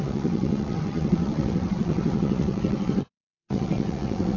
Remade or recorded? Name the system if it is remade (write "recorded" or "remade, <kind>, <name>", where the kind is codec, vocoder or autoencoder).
remade, vocoder, WaveNeXt